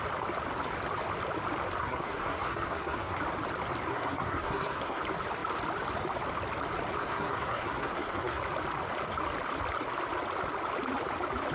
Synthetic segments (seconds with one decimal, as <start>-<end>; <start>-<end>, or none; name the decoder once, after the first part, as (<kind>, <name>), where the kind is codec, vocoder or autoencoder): 1.8-3.2 (codec, SNAC); 3.9-5.0; 7.0-8.4